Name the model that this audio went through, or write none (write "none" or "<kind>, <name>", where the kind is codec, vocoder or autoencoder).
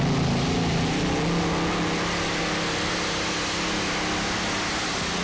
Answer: none